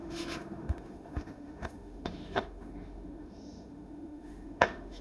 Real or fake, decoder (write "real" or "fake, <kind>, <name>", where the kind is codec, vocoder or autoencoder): fake, autoencoder, DAC-VAE